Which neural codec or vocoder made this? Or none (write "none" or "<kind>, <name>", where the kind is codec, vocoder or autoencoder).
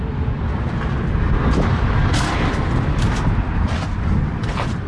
vocoder, BigVGAN v2